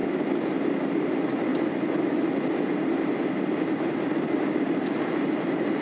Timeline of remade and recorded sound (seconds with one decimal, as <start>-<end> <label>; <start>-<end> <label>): 0.0-0.7 recorded; 0.7-1.5 remade; 1.5-2.7 recorded; 2.7-5.8 remade